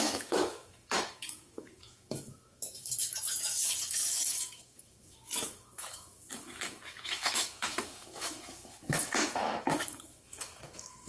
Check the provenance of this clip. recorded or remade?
remade